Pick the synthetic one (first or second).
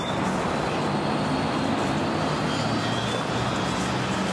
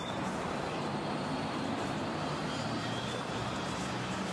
second